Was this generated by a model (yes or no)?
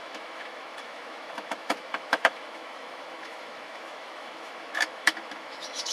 yes